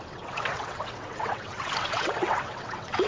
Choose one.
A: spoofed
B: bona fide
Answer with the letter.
A